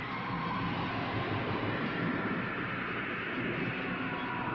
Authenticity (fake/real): real